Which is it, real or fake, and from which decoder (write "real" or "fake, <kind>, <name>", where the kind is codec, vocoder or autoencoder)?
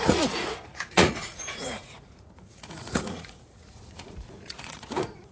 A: fake, vocoder, Vocos